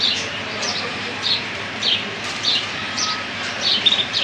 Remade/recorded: remade